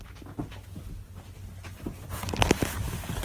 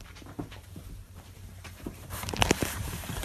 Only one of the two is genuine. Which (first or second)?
first